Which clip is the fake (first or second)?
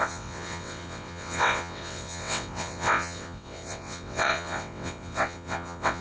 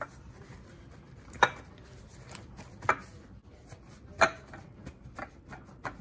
first